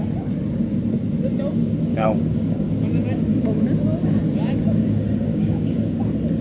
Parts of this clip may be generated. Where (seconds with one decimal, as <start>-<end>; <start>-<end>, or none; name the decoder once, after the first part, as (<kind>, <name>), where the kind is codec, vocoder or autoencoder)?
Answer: 1.9-2.7 (codec, DAC); 5.3-6.0